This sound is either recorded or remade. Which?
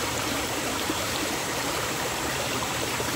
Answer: remade